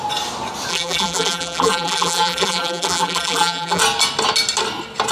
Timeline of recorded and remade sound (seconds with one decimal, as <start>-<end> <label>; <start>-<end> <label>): 0.0-0.7 recorded; 0.7-3.8 remade; 3.8-5.1 recorded